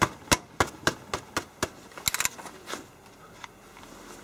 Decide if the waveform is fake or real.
real